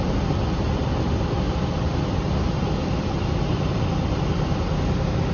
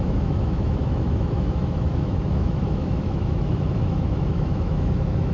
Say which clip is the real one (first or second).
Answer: first